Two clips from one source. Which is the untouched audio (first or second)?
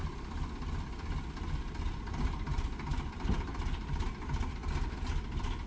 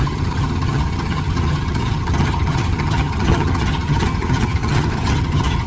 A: first